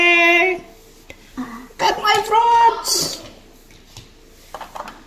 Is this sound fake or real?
real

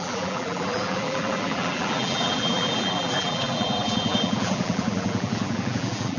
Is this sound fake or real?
fake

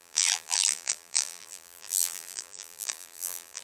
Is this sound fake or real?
fake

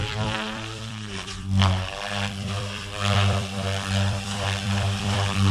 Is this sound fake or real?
fake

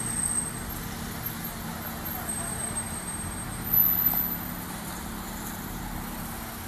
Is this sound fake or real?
real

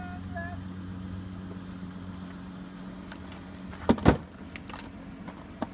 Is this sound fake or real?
real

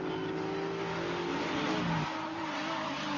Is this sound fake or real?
real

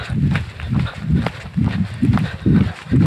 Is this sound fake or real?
real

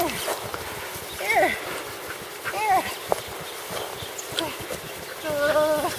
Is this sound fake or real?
real